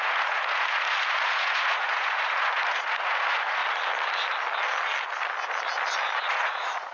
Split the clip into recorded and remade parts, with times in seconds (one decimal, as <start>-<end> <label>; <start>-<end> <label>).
0.0-3.6 remade; 3.6-6.3 recorded; 6.3-6.9 remade

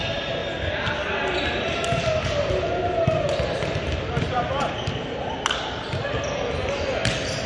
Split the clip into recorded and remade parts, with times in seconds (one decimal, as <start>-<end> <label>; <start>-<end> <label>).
0.0-7.5 recorded

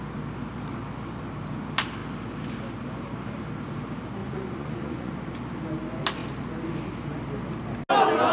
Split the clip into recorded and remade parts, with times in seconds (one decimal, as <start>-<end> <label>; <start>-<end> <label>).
0.0-4.2 recorded; 4.2-5.1 remade; 5.1-8.3 recorded

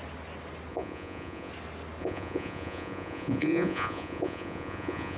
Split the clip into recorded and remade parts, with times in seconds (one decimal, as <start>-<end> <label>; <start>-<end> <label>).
0.0-0.7 recorded; 0.7-1.5 remade; 1.5-2.0 recorded; 2.0-5.2 remade

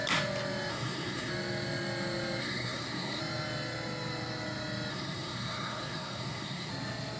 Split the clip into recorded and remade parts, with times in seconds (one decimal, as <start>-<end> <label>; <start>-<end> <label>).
0.0-0.7 recorded; 0.7-1.3 remade; 1.3-2.4 recorded; 2.4-3.2 remade; 3.2-4.9 recorded; 4.9-6.7 remade; 6.7-7.2 recorded